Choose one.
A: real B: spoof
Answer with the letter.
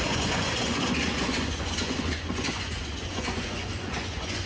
B